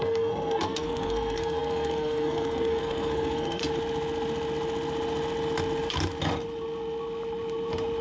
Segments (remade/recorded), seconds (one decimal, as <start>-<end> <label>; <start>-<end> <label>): 0.0-3.6 remade; 3.6-8.0 recorded